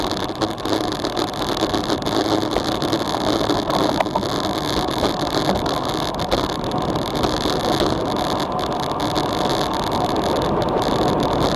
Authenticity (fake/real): real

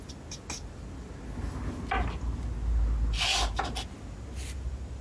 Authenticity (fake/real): real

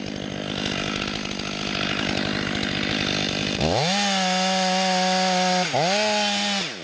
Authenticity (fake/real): real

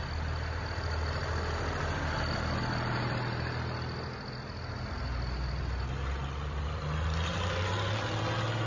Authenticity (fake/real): real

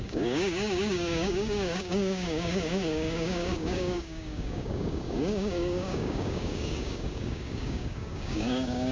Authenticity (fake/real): fake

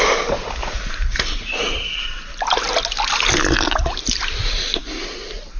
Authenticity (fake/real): real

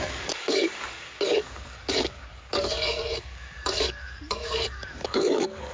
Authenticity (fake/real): fake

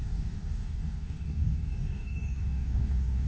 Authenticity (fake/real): fake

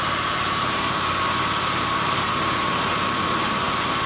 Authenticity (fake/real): real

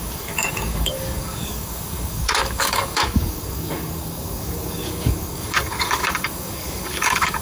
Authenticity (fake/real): fake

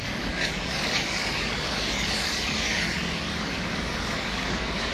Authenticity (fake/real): fake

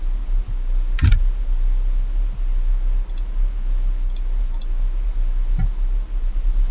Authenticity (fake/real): real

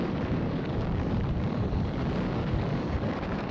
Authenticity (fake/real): fake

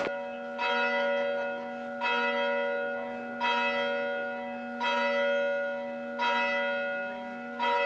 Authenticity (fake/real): real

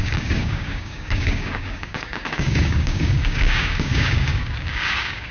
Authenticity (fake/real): fake